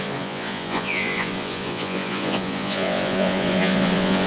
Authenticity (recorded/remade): remade